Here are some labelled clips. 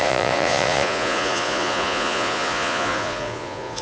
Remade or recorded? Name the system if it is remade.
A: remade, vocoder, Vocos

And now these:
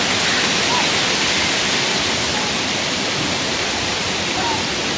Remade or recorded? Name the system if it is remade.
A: recorded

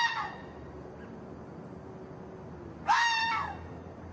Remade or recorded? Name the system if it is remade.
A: recorded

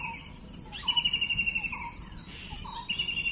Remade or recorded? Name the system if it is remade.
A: recorded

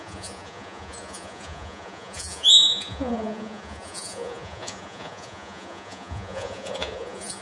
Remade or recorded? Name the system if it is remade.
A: remade, vocoder, Vocos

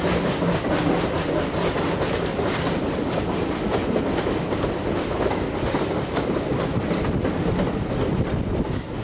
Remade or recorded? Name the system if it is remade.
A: recorded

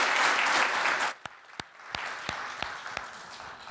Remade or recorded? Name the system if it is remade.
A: recorded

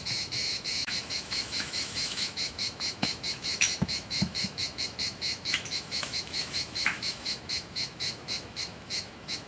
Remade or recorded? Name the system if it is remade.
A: remade, autoencoder, DAC-VAE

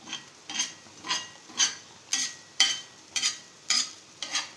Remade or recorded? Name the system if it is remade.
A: remade, vocoder, BigVGAN v2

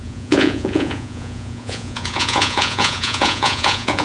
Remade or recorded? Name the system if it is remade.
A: remade, vocoder, Vocos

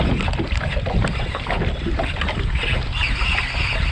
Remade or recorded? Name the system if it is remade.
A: recorded